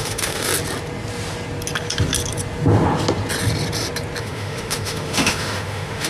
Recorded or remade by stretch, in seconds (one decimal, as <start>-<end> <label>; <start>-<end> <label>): 0.0-0.5 remade; 0.5-4.2 recorded; 4.2-6.1 remade